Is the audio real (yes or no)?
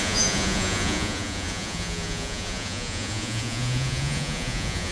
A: no